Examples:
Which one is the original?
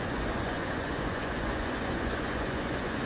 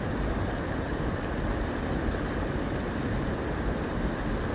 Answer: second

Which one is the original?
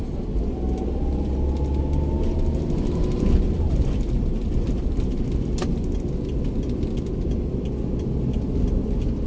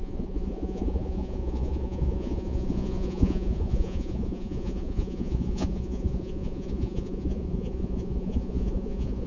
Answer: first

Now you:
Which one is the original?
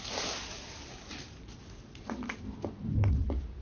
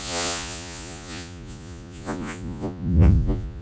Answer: first